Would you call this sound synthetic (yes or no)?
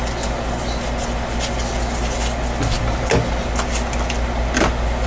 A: no